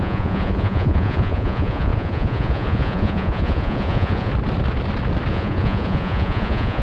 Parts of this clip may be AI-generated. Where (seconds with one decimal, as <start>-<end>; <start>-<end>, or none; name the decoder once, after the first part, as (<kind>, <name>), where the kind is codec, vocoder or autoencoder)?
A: 0.0-4.3 (vocoder, Vocos); 5.3-6.8